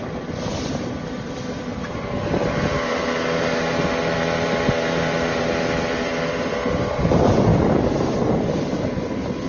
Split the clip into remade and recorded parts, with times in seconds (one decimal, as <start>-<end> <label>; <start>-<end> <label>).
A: 0.0-0.7 recorded; 0.7-9.5 remade